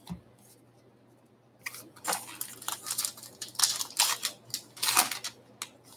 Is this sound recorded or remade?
recorded